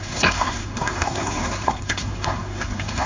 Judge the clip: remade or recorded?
remade